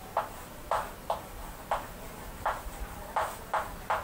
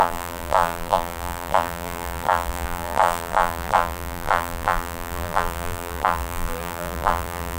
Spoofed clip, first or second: second